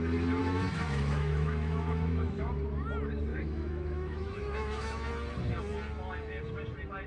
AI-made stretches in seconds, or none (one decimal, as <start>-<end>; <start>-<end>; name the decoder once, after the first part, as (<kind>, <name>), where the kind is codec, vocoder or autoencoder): 0.4-2.5 (autoencoder, DAC-VAE); 3.3-5.1